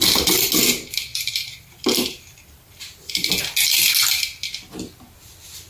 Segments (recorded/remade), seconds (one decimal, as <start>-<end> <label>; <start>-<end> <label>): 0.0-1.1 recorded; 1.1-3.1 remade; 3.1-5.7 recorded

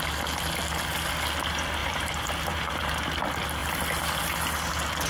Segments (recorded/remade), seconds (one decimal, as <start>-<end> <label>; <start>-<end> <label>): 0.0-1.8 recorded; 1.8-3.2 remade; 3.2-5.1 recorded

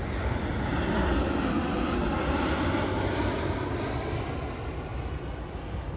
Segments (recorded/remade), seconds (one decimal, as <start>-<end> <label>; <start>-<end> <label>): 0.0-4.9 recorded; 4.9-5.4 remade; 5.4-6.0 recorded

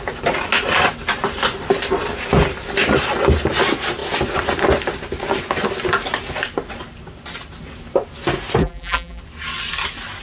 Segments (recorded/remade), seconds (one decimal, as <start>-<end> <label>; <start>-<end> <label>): 0.0-8.6 recorded; 8.6-9.2 remade; 9.2-10.2 recorded